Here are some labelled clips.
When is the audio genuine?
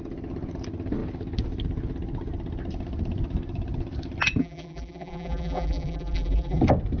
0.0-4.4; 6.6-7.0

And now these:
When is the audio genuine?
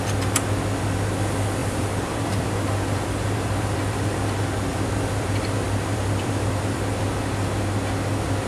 0.0-1.6; 4.3-4.7; 7.0-8.5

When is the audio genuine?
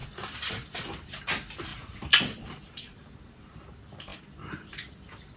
1.2-1.7; 3.5-4.1; 4.7-5.4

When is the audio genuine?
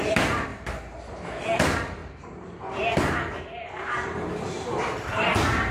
0.5-1.0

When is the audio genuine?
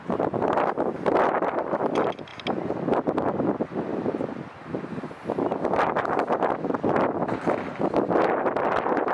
0.0-9.1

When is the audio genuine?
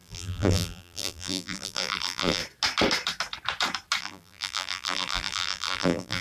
2.4-4.0